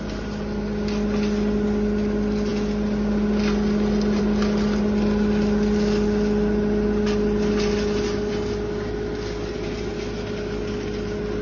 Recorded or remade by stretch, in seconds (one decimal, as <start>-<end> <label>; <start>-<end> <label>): 0.0-11.4 recorded